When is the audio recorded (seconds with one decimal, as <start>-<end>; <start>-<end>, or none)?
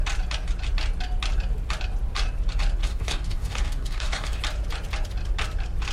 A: 0.0-2.8; 4.4-5.9